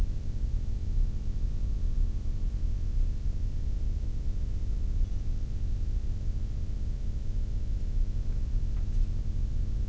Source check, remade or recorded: recorded